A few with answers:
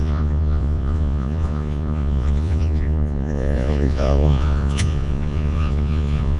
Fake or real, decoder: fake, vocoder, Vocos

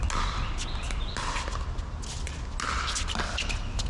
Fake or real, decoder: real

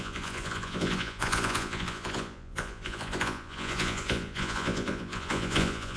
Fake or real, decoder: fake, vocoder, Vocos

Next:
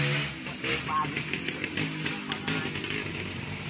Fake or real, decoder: real